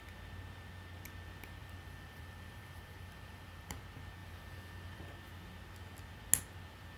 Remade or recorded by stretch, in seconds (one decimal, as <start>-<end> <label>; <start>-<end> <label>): 0.0-1.6 recorded; 1.6-3.8 remade; 3.8-4.2 recorded; 4.2-5.0 remade; 5.0-7.0 recorded